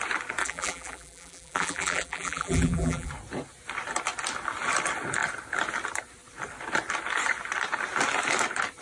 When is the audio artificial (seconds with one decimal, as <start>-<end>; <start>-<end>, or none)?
0.4-3.1